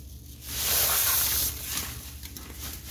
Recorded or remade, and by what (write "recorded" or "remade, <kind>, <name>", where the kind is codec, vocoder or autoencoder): recorded